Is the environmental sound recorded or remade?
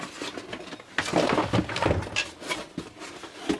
recorded